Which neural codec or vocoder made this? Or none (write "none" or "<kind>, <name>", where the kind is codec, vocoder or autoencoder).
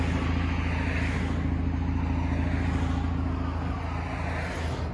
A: none